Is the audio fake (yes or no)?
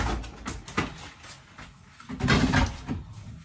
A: no